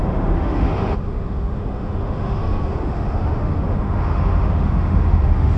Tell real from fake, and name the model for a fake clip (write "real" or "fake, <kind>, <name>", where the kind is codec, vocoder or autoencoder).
fake, autoencoder, DAC-VAE